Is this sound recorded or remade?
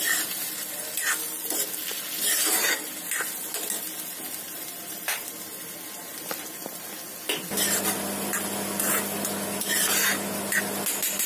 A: recorded